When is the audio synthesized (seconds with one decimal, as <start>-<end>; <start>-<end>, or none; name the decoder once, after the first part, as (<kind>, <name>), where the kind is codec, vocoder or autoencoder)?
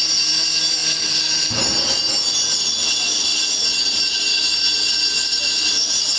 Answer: none